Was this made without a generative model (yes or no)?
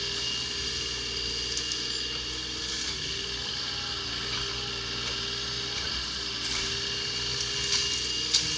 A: yes